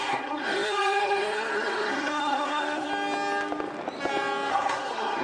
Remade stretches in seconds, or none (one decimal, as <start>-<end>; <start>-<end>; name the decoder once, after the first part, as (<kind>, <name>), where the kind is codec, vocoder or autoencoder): 0.0-2.9 (codec, SNAC); 4.5-5.2